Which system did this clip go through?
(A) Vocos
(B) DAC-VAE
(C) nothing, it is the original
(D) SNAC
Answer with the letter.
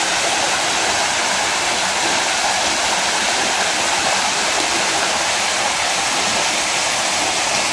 C